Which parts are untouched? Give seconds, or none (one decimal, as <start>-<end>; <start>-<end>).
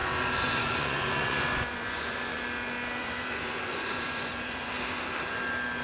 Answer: 2.4-3.0; 4.7-5.8